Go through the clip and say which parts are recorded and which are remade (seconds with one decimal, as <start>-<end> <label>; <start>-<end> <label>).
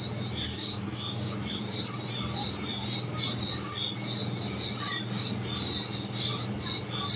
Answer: 0.0-0.5 recorded; 0.5-1.3 remade; 1.3-7.2 recorded